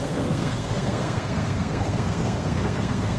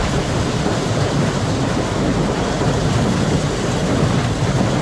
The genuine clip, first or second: second